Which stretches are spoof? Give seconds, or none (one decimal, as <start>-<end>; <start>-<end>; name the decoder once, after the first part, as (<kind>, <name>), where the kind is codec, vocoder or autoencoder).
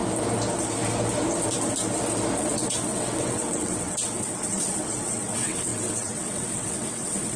2.4-7.4 (vocoder, WaveNeXt)